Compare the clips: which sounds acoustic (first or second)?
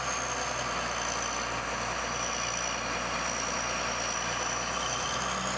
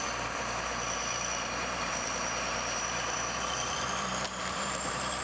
first